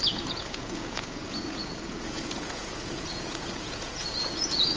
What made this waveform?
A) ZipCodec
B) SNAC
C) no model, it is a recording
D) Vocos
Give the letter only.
D